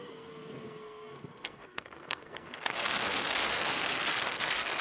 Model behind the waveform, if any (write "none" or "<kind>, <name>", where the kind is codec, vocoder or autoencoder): codec, SNAC